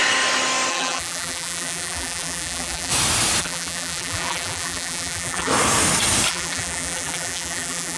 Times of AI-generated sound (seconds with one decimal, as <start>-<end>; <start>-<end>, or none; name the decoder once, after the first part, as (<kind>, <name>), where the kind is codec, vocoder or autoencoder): 0.7-2.9 (vocoder, BigVGAN v2); 3.4-5.5; 6.3-8.0